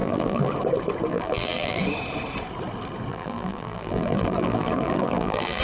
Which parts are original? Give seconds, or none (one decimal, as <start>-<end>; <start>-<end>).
0.5-1.1; 1.8-3.1